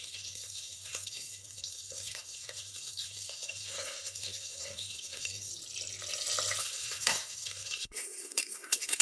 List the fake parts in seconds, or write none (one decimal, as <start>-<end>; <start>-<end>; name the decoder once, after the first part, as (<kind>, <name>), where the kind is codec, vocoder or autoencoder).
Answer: 0.0-5.5 (codec, SNAC); 6.6-9.0